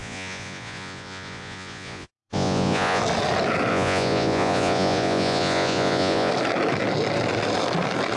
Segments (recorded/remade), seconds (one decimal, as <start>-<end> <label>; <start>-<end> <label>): 0.0-3.0 remade; 3.0-3.7 recorded; 3.7-6.3 remade; 6.3-8.2 recorded